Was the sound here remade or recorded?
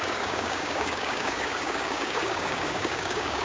remade